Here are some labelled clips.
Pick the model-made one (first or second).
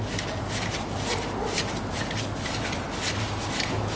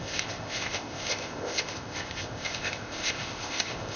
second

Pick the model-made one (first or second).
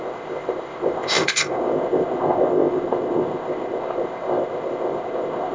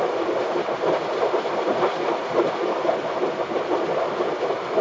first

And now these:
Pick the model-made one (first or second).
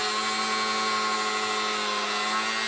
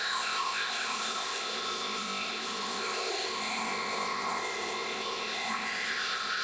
second